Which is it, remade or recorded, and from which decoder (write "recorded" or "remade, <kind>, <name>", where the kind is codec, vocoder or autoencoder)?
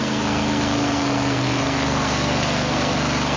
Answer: remade, codec, SNAC